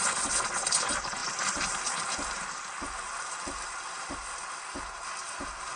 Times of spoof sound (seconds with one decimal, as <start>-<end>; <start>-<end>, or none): none